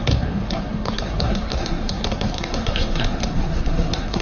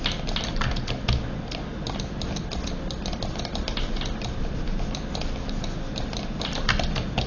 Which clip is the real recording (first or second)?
second